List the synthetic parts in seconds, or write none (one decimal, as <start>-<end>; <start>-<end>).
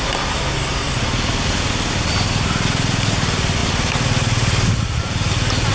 none